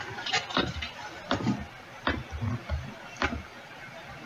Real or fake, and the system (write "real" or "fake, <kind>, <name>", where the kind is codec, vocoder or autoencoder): real